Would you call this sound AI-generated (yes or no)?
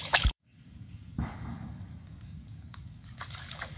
yes